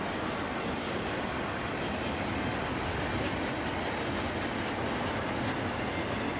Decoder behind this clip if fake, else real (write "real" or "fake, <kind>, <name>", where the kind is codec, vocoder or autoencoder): real